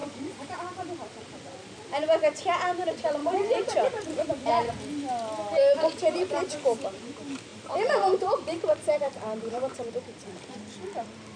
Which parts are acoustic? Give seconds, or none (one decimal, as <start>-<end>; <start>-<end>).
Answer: 1.1-3.2; 4.7-7.5; 9.9-11.4